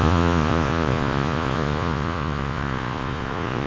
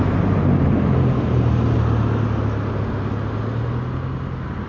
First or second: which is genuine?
second